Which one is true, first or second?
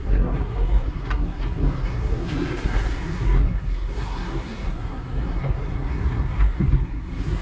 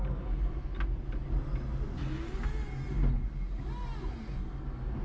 second